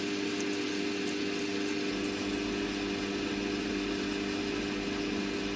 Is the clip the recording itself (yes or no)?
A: yes